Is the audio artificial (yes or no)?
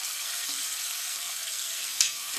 yes